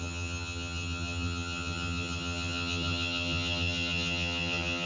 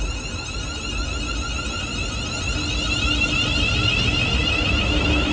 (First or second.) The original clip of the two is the second